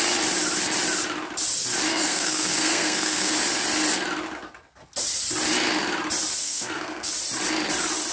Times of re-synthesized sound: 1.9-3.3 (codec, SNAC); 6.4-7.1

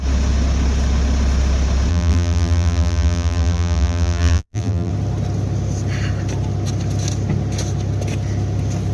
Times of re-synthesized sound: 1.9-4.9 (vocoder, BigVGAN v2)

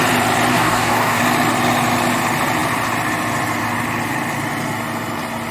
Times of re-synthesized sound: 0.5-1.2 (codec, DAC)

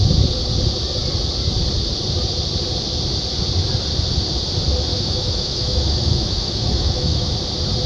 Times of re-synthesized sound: 4.9-7.3 (autoencoder, DAC-VAE)